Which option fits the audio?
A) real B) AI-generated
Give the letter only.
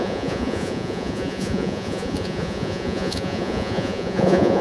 B